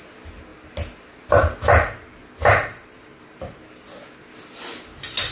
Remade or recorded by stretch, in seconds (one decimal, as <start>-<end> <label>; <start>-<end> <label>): 0.0-2.2 recorded; 2.2-3.6 remade; 3.6-5.3 recorded